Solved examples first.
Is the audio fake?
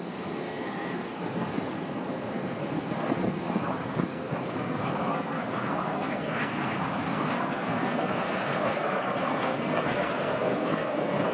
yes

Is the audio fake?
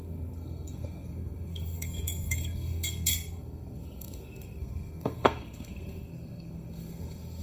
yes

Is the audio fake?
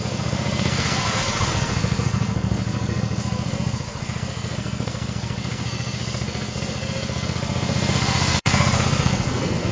yes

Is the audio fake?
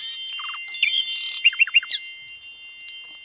no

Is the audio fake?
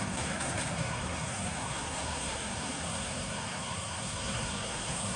yes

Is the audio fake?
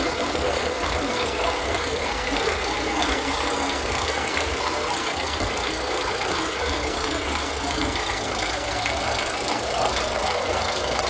yes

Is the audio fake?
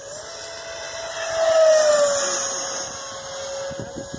no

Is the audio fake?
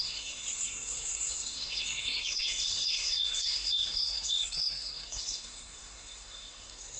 yes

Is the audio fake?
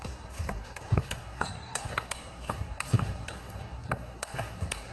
yes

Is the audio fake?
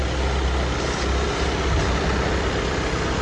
no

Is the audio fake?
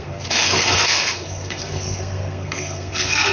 yes